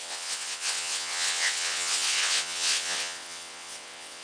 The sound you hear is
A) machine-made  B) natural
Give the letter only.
A